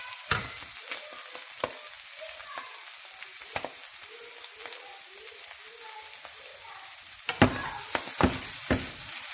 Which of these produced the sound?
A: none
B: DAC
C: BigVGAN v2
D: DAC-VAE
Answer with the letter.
A